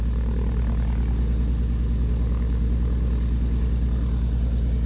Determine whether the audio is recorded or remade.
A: recorded